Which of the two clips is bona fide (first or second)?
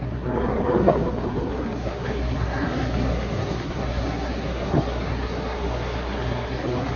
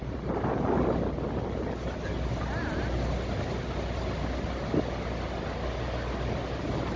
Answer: second